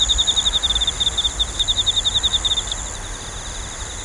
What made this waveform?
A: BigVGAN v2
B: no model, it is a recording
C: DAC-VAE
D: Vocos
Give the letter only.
B